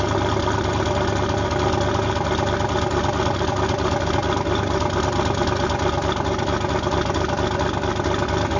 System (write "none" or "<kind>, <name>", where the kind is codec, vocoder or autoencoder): none